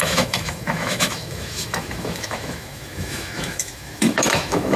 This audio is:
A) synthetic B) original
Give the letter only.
A